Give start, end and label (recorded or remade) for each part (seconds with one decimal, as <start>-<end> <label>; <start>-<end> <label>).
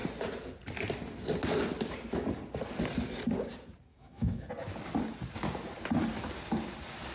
0.0-3.9 recorded; 3.9-4.5 remade; 4.5-7.1 recorded